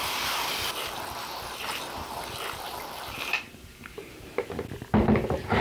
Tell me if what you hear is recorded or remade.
recorded